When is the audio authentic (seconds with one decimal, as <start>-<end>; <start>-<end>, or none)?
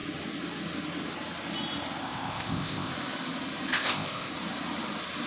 0.0-2.0; 2.9-3.7; 4.3-5.3